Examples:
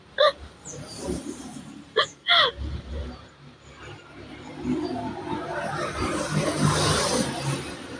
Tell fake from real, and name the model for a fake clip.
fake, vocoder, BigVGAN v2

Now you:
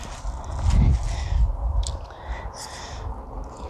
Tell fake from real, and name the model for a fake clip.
real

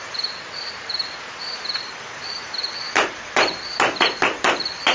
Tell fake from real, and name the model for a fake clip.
fake, vocoder, BigVGAN v2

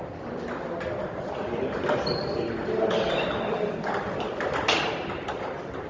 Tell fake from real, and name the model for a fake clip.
real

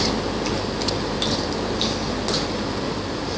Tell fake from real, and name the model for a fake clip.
real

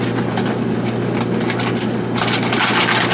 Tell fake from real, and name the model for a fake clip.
real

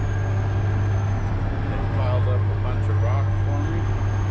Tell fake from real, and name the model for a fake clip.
real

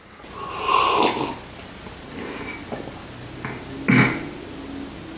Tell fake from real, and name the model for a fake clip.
real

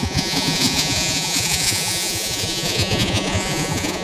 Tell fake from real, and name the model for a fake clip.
fake, vocoder, Vocos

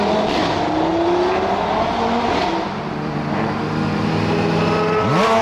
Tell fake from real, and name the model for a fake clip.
real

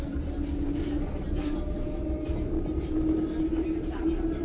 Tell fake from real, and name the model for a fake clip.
real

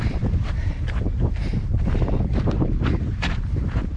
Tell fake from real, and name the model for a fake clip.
fake, vocoder, BigVGAN v2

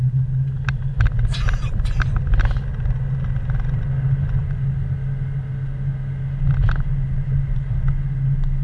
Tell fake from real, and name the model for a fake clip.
real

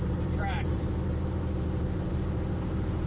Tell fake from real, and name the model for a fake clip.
fake, vocoder, BigVGAN v2